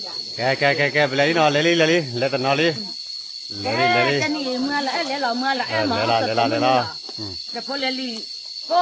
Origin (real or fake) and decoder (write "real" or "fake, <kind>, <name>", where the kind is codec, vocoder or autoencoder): real